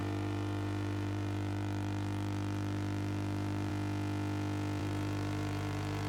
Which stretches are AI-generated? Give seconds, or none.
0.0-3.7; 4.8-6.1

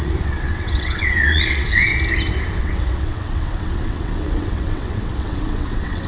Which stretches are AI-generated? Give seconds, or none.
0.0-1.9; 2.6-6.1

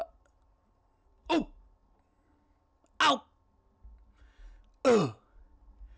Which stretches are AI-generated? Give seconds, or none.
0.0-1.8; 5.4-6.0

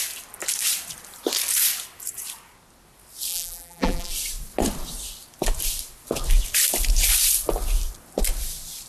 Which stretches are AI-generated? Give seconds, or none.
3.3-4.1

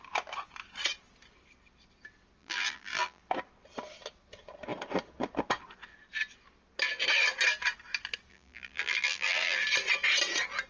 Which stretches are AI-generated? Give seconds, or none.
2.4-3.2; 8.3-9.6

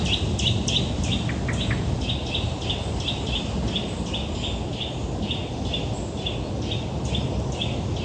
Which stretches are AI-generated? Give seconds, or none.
none

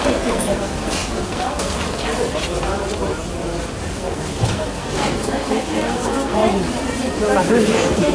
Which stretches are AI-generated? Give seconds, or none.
0.0-2.1; 3.9-6.4; 7.4-8.1